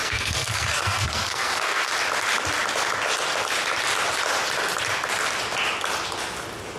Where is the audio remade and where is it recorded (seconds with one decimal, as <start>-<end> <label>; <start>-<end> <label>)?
0.0-1.9 remade; 1.9-6.8 recorded